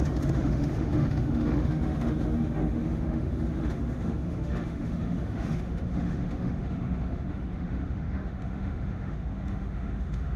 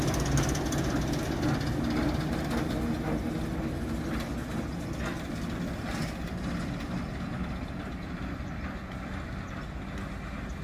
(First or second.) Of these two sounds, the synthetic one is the first